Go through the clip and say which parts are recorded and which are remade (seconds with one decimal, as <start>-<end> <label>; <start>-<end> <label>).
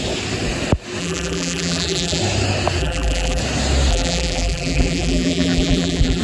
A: 0.0-1.0 recorded; 1.0-2.2 remade; 2.2-2.8 recorded; 2.8-3.4 remade; 3.4-3.9 recorded; 3.9-6.2 remade